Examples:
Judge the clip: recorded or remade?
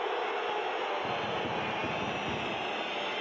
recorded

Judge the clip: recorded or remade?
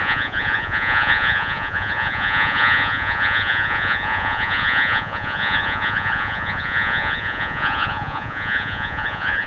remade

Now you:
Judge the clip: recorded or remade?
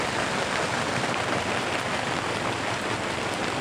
remade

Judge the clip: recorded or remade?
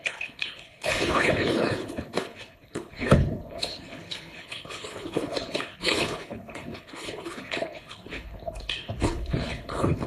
remade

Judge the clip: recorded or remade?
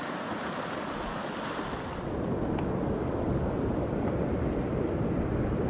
recorded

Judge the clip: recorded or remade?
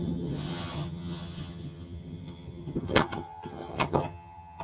remade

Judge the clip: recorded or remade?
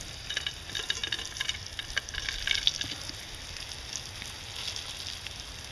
recorded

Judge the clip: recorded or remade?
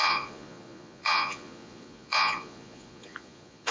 remade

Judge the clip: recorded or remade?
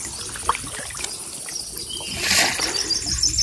recorded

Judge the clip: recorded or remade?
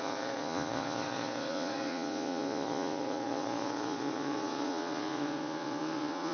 remade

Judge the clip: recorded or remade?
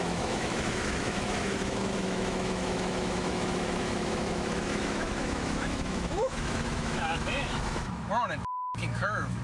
remade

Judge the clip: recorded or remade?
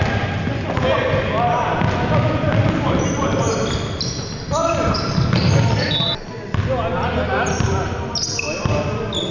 recorded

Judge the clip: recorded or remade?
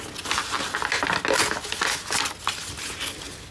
recorded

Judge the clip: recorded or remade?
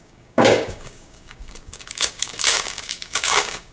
remade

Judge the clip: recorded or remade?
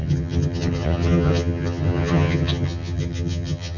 remade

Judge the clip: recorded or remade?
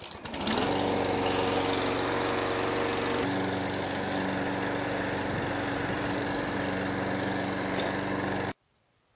recorded